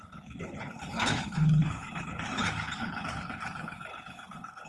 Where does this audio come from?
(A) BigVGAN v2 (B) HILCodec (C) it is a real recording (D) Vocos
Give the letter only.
B